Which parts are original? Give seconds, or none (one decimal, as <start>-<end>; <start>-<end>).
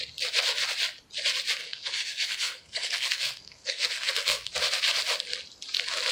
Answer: 0.0-1.6; 4.5-6.1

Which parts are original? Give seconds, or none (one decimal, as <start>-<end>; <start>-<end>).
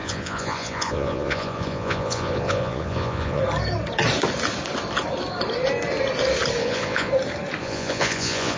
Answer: 3.4-6.6; 7.1-7.6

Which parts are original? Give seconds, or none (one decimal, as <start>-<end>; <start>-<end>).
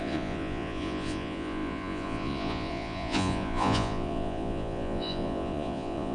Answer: none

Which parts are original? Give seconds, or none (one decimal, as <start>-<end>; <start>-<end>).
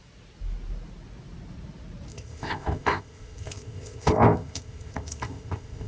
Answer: 0.0-2.1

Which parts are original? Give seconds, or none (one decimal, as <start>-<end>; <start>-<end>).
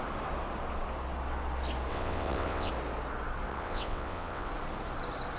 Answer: 0.0-1.9; 2.7-3.5; 4.5-5.4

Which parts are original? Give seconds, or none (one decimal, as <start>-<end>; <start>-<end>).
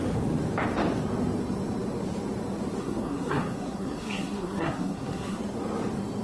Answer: 0.0-2.8; 5.4-6.2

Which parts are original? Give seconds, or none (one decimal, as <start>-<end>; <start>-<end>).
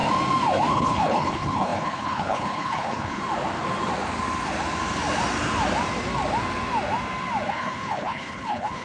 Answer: 0.0-0.7; 3.2-7.5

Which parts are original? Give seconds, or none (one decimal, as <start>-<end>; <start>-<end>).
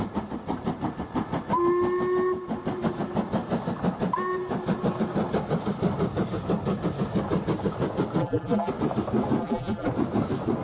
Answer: 0.0-8.2; 8.7-9.4; 9.9-10.6